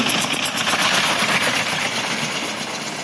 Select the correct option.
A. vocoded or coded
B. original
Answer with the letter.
B